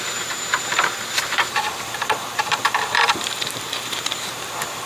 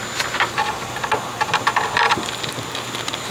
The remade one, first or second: first